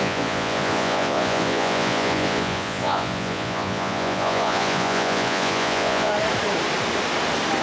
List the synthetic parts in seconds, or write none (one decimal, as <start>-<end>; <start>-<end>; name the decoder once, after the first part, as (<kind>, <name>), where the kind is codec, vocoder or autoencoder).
0.0-6.1 (vocoder, Vocos)